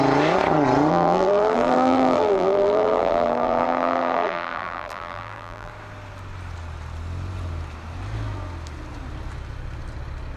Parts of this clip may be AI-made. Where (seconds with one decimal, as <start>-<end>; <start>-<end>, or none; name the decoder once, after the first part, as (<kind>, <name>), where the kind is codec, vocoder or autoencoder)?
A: 0.9-5.7 (vocoder, BigVGAN v2)